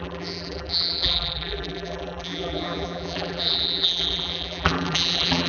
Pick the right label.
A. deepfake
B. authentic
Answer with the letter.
A